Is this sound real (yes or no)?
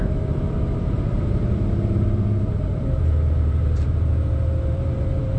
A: no